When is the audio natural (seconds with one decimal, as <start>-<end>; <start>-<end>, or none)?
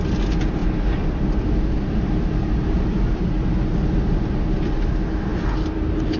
0.0-0.6; 4.3-5.3